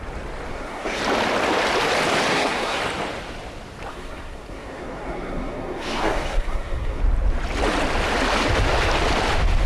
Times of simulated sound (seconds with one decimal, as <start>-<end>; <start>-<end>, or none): 0.5-1.0; 2.3-2.8; 3.9-7.0